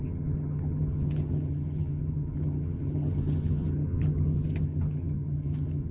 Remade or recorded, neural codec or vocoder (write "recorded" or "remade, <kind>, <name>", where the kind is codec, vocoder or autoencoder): remade, vocoder, HiFi-GAN